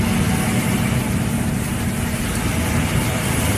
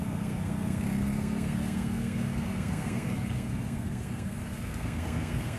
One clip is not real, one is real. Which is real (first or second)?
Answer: first